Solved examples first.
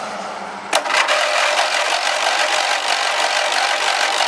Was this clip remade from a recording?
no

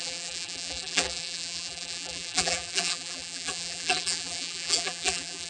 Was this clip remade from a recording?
yes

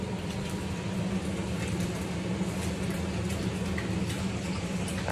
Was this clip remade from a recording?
no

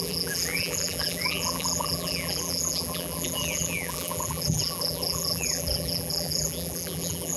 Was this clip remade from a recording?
yes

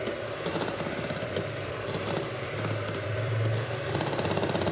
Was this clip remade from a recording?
yes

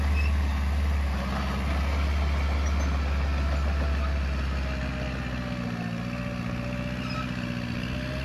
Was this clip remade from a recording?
no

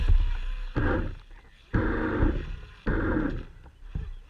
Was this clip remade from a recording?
no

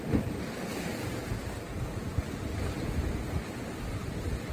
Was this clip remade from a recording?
no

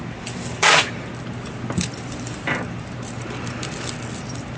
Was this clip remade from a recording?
yes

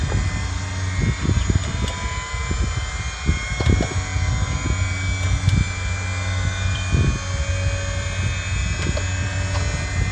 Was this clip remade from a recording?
no